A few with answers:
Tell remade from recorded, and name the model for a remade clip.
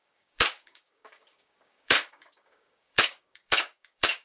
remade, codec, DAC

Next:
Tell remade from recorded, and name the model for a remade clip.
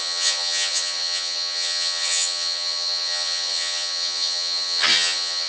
remade, vocoder, HiFi-GAN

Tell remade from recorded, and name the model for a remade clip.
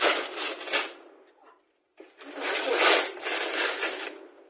recorded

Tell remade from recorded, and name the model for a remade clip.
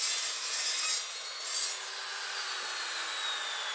recorded